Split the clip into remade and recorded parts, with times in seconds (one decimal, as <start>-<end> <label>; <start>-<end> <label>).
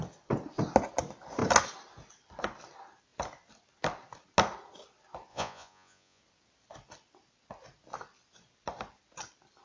0.0-5.3 recorded; 5.3-6.2 remade; 6.2-9.6 recorded